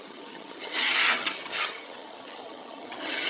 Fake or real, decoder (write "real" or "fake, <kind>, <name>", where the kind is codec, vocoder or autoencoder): fake, vocoder, HiFi-GAN